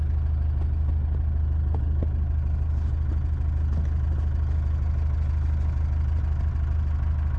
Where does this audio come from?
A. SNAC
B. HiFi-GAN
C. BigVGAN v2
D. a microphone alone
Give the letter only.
D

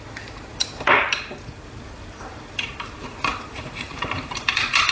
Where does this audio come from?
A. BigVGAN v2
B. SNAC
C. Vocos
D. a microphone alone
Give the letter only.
A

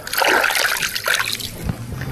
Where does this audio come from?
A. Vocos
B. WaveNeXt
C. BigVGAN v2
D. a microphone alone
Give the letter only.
D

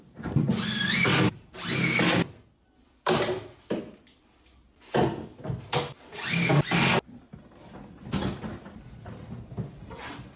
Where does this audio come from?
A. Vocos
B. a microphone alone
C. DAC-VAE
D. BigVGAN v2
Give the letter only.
B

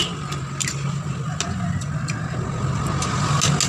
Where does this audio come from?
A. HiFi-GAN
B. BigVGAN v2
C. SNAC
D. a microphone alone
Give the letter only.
D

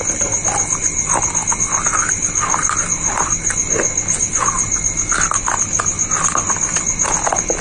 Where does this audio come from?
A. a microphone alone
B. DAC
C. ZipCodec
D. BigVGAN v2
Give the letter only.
A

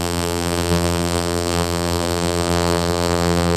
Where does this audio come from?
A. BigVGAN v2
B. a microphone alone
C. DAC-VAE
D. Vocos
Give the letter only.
A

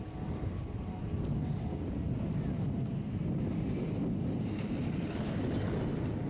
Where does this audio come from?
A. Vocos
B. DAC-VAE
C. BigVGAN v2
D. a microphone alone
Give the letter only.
D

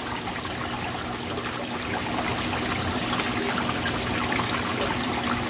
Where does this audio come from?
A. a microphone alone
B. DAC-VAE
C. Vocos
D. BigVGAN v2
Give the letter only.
A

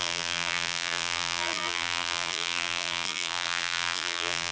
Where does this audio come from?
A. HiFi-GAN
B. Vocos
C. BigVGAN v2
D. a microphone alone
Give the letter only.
C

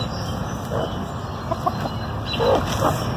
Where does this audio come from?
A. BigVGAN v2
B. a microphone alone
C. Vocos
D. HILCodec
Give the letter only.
B